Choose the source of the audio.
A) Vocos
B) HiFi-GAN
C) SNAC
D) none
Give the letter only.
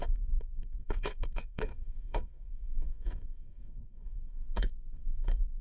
C